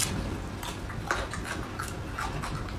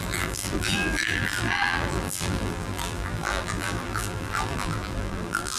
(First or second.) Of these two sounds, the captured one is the first